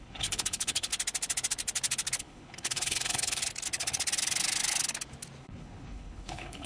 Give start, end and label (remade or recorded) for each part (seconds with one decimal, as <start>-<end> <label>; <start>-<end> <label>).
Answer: 0.0-0.9 remade; 0.9-2.2 recorded; 2.2-3.4 remade; 3.4-5.4 recorded; 5.4-6.7 remade